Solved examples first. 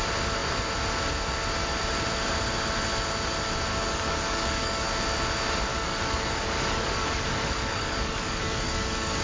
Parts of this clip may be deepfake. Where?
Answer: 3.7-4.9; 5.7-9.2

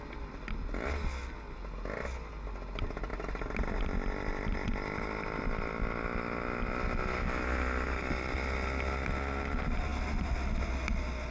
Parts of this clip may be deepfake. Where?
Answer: none

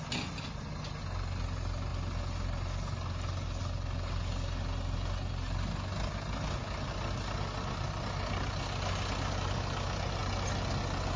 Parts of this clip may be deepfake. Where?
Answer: none

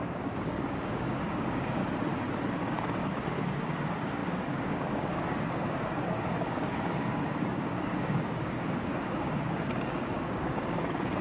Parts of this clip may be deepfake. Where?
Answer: 0.0-1.8; 2.6-11.2

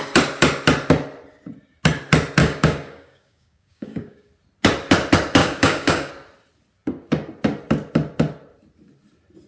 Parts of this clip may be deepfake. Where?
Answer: 2.4-4.3; 5.4-6.1

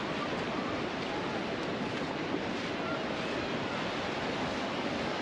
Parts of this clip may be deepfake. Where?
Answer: 4.5-5.2

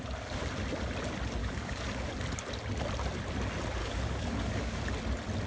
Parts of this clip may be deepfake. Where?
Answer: 1.4-2.1; 3.8-4.8

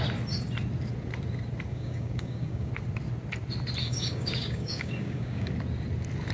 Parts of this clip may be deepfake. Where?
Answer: 1.7-2.7; 3.8-5.5